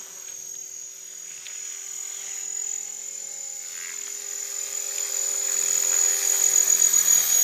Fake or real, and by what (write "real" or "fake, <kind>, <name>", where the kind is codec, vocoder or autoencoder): real